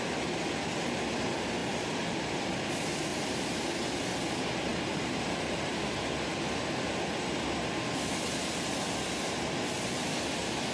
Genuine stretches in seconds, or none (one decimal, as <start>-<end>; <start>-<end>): 0.0-3.1; 4.1-10.7